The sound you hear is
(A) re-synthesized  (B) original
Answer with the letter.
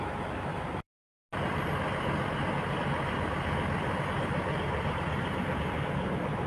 B